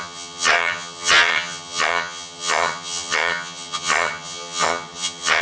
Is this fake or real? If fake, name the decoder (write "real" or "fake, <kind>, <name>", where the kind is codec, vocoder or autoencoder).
fake, vocoder, HiFi-GAN